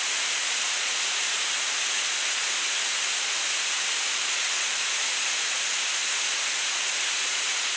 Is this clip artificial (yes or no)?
yes